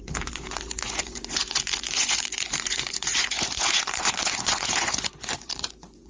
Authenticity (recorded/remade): remade